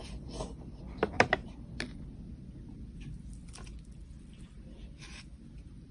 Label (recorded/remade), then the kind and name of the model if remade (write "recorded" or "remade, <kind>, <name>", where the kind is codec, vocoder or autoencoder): recorded